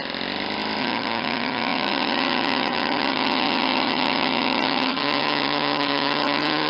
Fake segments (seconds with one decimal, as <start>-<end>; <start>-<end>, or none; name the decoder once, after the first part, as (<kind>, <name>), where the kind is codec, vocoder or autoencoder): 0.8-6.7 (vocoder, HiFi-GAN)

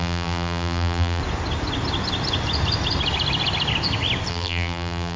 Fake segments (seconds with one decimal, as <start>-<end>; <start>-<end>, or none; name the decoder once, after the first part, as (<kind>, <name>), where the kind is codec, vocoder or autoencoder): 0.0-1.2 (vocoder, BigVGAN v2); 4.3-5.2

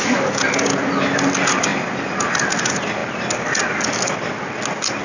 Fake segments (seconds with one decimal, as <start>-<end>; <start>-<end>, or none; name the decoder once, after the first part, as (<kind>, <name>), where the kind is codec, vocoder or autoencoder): none

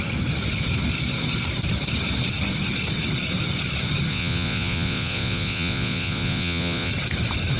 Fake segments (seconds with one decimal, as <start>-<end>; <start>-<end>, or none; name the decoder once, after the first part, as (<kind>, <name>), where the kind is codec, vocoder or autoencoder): 4.1-6.9 (vocoder, Vocos)